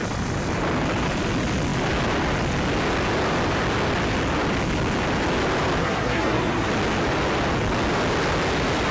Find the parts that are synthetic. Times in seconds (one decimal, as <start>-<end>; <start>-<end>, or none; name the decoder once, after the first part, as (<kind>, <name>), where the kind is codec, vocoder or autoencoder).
5.8-6.7 (codec, SNAC)